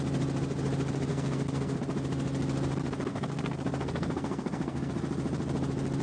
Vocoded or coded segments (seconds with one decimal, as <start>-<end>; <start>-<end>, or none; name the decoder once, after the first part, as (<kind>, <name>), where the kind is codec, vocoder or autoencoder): 1.1-1.8 (codec, SNAC); 3.1-4.9